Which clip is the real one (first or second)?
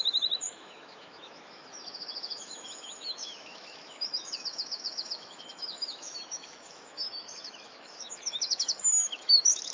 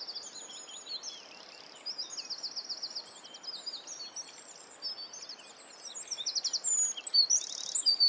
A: second